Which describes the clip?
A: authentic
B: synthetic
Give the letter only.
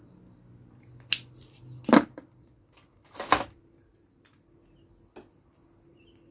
A